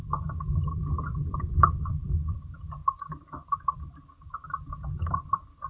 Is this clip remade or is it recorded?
remade